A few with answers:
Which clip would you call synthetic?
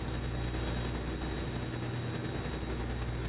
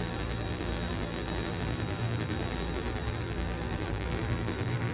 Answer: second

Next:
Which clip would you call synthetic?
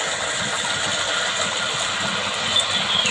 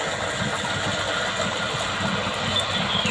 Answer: first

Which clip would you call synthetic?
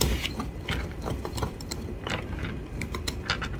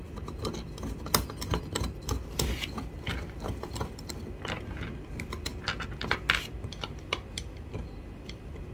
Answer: first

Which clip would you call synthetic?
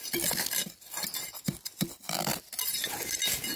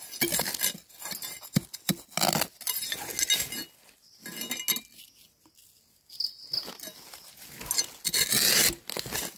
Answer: first